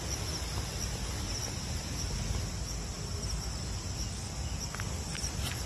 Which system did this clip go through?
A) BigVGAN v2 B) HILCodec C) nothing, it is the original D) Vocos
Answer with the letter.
C